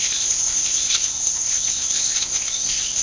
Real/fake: fake